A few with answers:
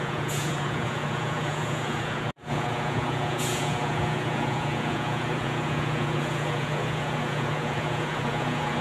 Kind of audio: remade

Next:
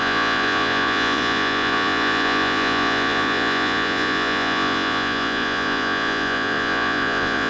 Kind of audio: remade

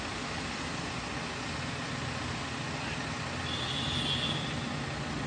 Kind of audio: recorded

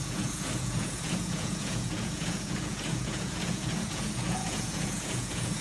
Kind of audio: remade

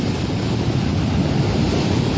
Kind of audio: recorded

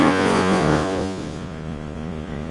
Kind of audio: remade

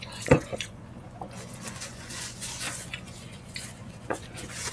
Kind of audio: remade